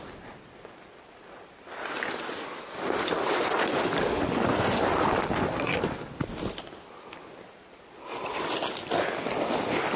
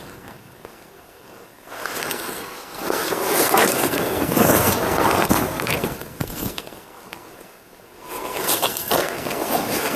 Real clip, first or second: first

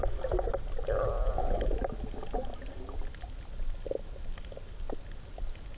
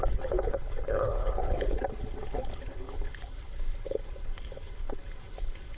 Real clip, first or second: first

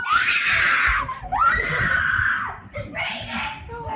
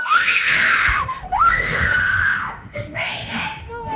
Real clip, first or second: first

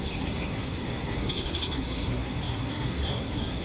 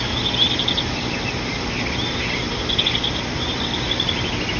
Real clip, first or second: second